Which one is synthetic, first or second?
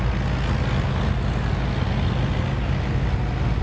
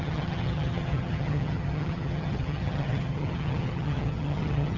second